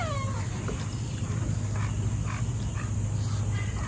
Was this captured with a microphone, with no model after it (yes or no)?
yes